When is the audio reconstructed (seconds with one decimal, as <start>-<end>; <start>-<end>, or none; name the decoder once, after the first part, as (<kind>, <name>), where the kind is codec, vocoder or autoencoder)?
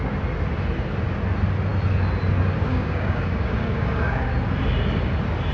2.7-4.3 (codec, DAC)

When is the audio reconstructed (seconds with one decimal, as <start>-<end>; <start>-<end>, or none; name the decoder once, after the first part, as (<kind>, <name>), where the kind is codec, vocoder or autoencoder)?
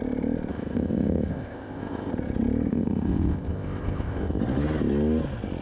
0.5-2.1 (codec, ZipCodec); 2.7-4.4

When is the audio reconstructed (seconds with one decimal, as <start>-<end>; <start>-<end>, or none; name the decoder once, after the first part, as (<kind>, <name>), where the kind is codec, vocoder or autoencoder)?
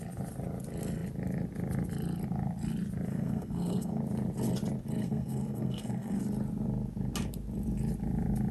3.1-4.0 (codec, SNAC); 5.0-6.2